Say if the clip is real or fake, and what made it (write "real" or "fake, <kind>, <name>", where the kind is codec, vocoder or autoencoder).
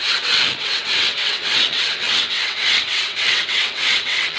fake, vocoder, WaveNeXt